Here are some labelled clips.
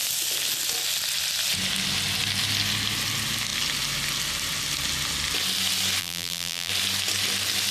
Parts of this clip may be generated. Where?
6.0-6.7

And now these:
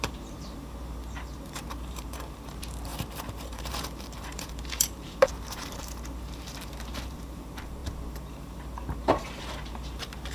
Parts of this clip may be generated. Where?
0.0-10.3

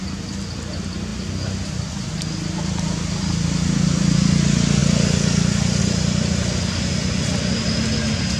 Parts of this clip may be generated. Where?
none

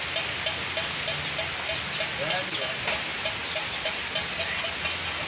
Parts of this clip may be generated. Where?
3.1-4.4